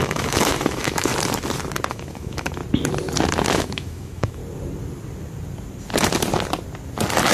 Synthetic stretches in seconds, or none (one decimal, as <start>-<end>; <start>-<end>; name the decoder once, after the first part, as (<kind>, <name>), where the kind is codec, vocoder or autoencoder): 0.0-1.1 (autoencoder, DAC-VAE); 1.9-2.6; 3.5-4.4